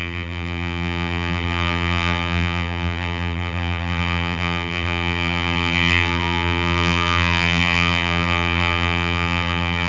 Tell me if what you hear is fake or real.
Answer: fake